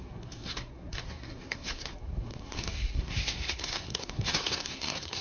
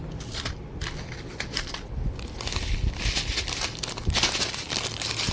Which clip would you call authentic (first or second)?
second